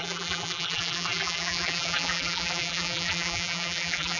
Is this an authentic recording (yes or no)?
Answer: no